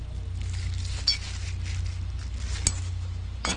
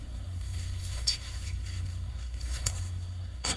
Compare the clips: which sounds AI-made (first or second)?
second